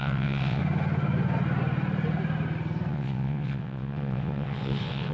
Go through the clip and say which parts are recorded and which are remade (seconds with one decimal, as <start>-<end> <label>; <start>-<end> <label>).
0.0-0.6 remade; 0.6-2.9 recorded; 2.9-5.1 remade